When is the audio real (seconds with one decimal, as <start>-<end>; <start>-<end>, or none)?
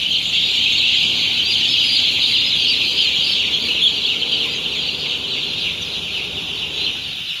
0.0-7.4